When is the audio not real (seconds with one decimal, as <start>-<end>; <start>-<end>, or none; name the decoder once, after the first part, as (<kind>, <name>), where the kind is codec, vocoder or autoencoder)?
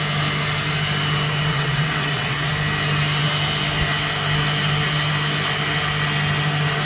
1.5-2.5 (vocoder, WaveNeXt)